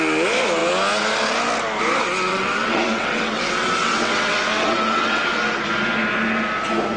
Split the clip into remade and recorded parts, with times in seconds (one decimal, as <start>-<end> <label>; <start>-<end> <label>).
0.0-2.3 recorded; 2.3-5.4 remade; 5.4-7.0 recorded

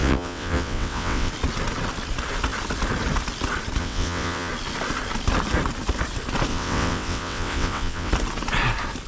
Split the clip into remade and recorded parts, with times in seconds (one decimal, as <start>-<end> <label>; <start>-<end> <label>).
0.0-1.3 remade; 1.3-3.8 recorded; 3.8-4.5 remade; 4.5-6.5 recorded; 6.5-8.1 remade; 8.1-9.1 recorded

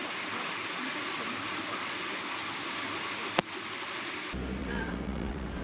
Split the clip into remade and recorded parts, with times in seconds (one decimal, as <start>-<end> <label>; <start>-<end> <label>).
0.0-4.6 recorded; 4.6-5.6 remade

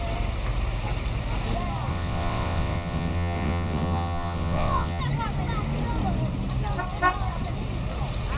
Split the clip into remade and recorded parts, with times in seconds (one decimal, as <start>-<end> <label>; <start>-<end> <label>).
0.0-1.9 recorded; 1.9-5.0 remade; 5.0-8.4 recorded